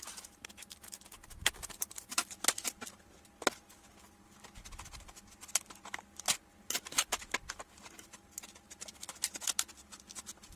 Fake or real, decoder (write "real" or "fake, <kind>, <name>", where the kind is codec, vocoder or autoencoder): real